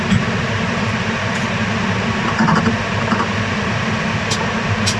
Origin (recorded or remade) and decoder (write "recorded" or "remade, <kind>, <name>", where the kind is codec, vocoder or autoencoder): recorded